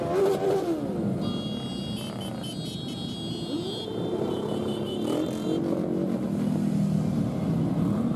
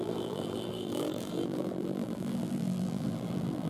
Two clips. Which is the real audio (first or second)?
first